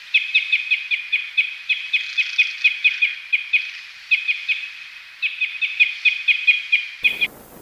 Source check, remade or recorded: recorded